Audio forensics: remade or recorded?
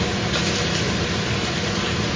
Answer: recorded